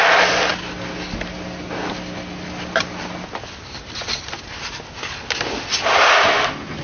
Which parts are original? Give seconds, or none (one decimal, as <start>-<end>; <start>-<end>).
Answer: 0.0-6.8